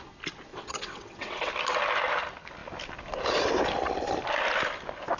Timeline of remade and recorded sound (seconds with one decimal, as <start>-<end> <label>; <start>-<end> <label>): 0.0-0.5 recorded; 0.5-1.5 remade; 1.5-5.2 recorded